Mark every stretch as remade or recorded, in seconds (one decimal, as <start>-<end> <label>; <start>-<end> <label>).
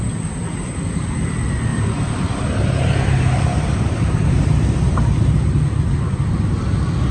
0.0-1.7 recorded; 1.7-5.6 remade; 5.6-7.1 recorded